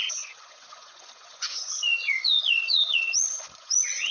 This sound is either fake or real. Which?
fake